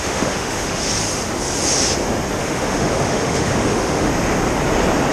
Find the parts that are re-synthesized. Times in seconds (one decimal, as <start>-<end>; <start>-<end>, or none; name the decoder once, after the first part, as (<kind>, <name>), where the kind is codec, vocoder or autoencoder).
0.0-0.9 (autoencoder, DAC-VAE); 2.4-4.1